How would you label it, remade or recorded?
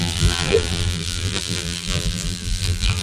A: remade